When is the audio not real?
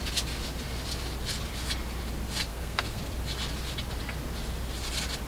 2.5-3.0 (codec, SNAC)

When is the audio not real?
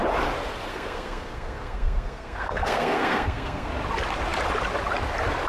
0.7-3.7 (codec, SNAC)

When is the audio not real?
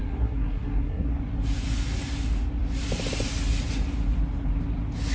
0.0-1.1 (codec, SNAC)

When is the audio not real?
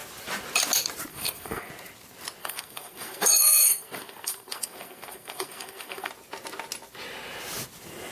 1.1-1.7 (codec, SNAC); 2.4-6.1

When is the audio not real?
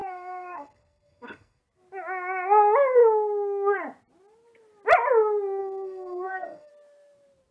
0.0-1.6 (codec, SNAC); 5.6-6.7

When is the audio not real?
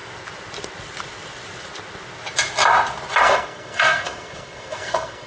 3.2-5.3 (codec, SNAC)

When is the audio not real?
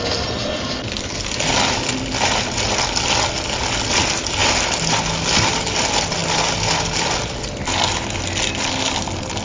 none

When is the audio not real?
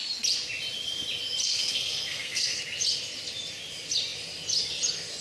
1.4-2.6 (codec, SNAC)